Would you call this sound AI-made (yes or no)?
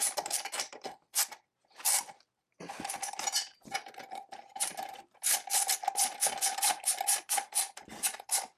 yes